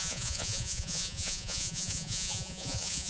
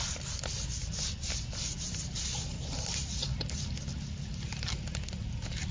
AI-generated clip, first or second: first